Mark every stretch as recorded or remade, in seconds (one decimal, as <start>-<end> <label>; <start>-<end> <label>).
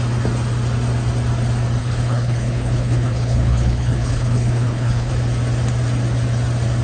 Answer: 0.0-1.8 recorded; 1.8-5.1 remade; 5.1-6.8 recorded